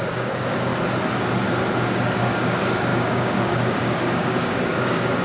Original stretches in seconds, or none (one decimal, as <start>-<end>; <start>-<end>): 0.7-2.2